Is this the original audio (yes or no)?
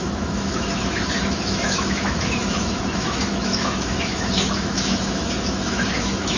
no